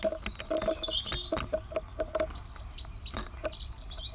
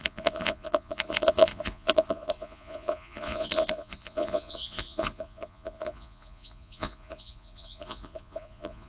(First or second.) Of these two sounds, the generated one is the second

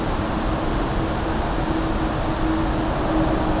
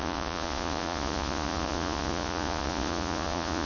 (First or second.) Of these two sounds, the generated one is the second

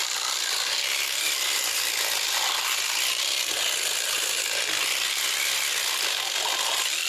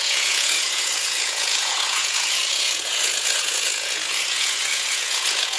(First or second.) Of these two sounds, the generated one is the second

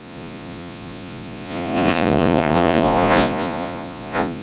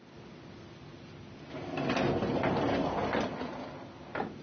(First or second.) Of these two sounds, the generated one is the first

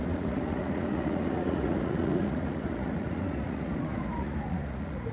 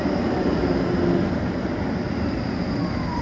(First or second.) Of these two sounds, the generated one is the first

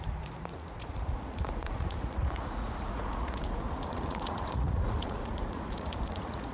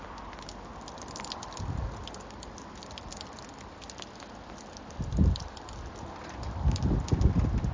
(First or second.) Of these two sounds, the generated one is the first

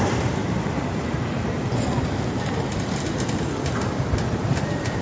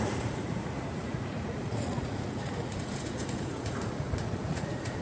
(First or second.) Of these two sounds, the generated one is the second